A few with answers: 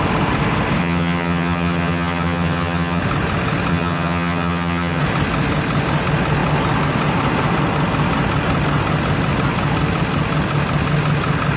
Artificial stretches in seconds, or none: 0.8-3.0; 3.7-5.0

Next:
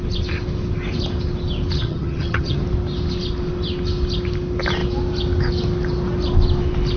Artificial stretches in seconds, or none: 1.8-2.6

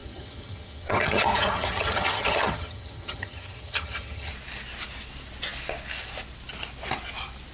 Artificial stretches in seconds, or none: 0.0-4.3

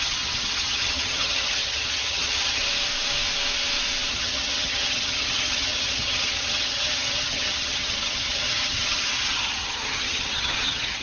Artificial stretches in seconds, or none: 0.0-2.6; 4.1-11.0

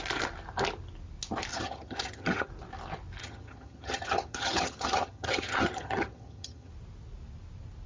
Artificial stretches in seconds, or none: 1.5-2.5; 3.2-6.7

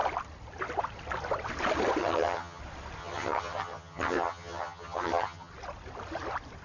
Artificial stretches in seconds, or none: 2.0-2.6; 3.0-5.5